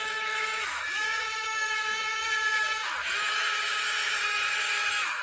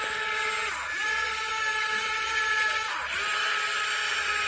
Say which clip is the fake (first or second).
first